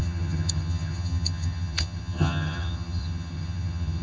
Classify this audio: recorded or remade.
remade